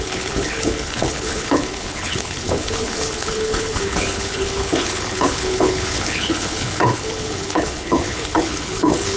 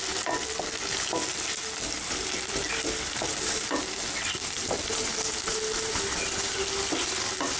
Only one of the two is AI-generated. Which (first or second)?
first